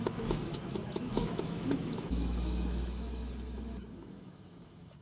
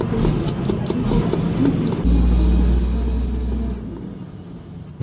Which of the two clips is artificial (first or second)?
first